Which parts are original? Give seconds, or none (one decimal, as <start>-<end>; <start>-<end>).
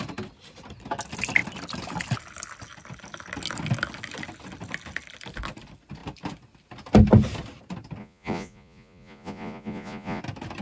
0.0-8.0; 10.2-10.6